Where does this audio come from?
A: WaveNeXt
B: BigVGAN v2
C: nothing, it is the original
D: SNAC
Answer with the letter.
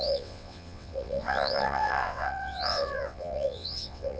A